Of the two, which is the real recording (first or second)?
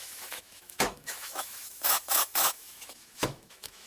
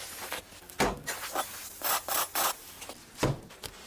second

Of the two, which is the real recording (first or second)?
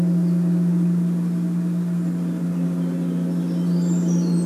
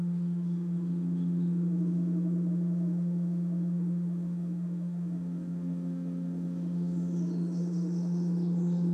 first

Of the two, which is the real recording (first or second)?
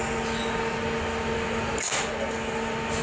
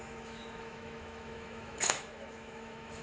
first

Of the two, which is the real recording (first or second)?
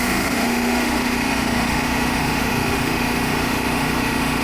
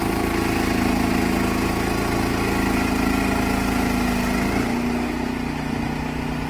second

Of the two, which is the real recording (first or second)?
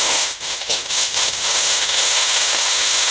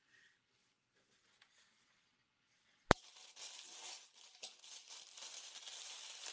second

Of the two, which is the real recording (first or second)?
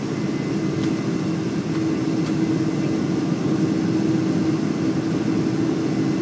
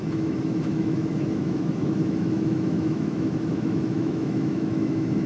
first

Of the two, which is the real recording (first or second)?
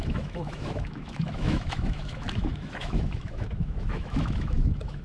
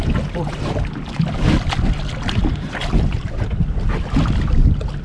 second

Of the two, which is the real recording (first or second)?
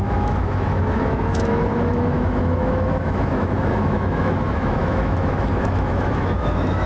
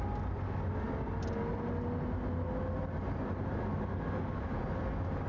second